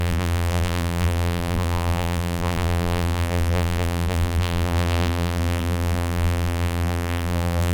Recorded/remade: remade